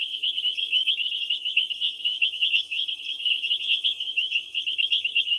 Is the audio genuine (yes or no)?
no